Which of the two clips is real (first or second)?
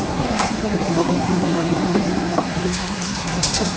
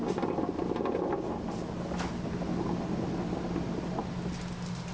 second